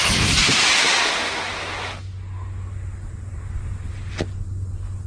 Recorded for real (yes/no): yes